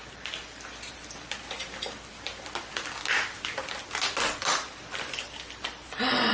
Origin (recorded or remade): remade